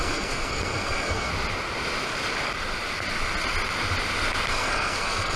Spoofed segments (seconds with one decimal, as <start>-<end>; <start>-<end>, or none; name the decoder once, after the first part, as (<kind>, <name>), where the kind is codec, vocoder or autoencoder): 0.0-1.3 (codec, SNAC); 4.5-5.4

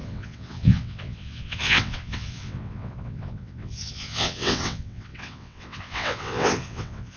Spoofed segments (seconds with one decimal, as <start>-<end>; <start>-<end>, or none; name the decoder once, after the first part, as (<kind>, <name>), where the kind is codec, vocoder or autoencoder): 0.0-7.2 (vocoder, WaveNeXt)

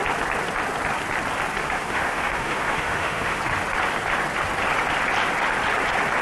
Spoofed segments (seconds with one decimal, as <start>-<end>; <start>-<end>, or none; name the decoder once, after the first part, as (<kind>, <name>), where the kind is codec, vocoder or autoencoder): 1.6-3.4 (autoencoder, DAC-VAE)